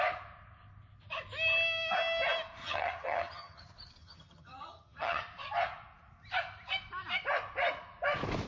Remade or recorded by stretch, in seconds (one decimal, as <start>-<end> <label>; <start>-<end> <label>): 0.0-2.6 recorded; 2.6-3.6 remade; 3.6-4.0 recorded; 4.0-5.2 remade; 5.2-8.5 recorded